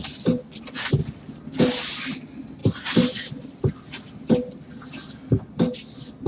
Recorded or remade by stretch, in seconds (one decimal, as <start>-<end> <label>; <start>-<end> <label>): 0.0-1.0 recorded; 1.0-1.6 remade; 1.6-2.6 recorded; 2.6-5.5 remade; 5.5-6.3 recorded